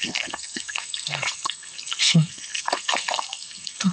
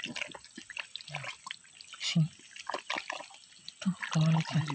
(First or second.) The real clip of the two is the second